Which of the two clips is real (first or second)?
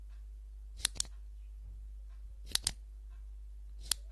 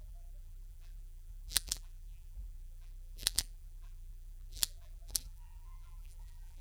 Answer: first